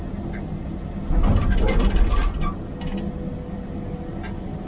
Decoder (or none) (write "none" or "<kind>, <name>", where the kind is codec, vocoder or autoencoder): none